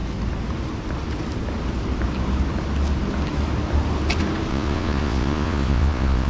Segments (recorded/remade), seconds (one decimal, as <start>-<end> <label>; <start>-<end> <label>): 0.0-4.5 recorded; 4.5-6.3 remade